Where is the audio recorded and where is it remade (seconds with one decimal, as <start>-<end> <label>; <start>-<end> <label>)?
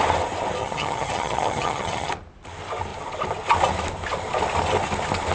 0.0-0.6 recorded; 0.6-2.1 remade; 2.1-5.3 recorded